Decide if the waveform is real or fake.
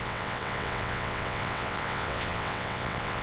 fake